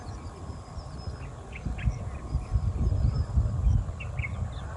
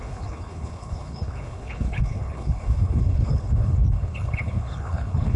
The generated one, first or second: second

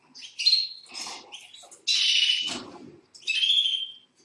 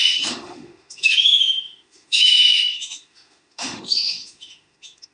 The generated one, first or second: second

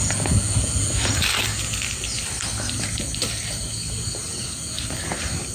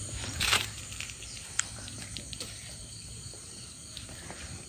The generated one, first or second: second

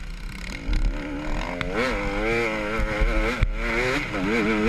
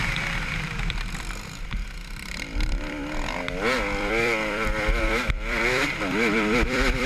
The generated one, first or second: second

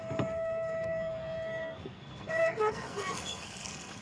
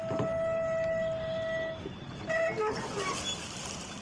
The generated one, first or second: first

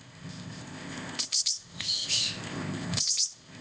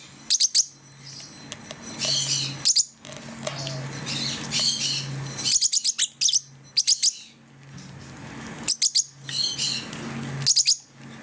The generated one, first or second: first